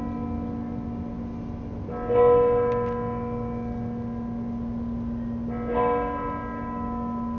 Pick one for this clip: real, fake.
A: real